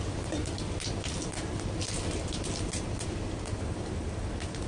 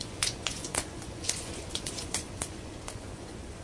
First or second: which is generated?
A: second